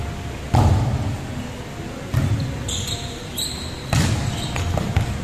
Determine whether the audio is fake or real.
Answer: real